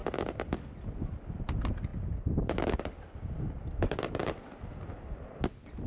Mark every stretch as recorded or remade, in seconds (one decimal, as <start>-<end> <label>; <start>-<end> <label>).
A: 0.0-5.9 recorded